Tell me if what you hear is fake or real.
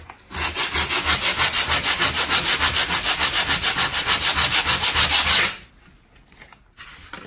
real